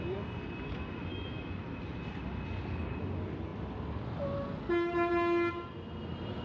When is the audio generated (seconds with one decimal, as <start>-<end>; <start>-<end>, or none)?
1.1-1.6